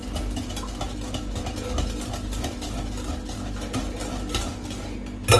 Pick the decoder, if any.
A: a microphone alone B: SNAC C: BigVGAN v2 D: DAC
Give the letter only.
A